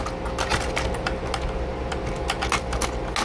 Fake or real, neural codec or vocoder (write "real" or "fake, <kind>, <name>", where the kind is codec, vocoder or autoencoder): real